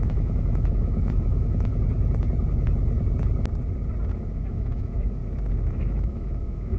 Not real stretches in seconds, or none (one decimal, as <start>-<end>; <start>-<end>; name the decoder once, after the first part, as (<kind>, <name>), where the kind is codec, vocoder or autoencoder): 0.0-1.7 (autoencoder, DAC-VAE); 4.3-5.2; 5.7-6.8